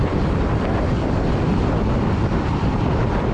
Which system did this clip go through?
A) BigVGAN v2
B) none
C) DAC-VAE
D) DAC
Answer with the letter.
A